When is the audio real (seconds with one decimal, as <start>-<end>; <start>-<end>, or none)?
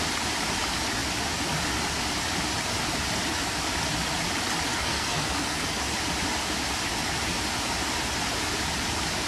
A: 0.0-4.7; 5.8-9.3